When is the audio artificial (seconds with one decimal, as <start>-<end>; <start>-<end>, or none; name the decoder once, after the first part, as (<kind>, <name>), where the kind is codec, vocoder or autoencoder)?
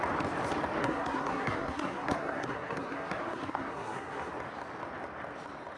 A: 0.8-4.3 (codec, SNAC)